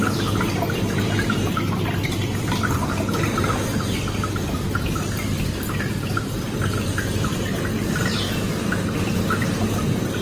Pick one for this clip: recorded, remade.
recorded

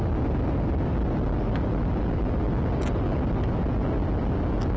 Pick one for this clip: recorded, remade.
recorded